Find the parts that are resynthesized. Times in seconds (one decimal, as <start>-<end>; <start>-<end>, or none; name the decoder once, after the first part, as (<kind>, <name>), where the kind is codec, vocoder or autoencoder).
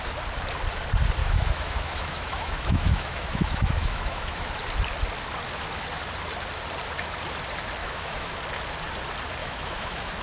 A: 1.2-4.5 (autoencoder, DAC-VAE); 7.8-8.4; 9.4-10.2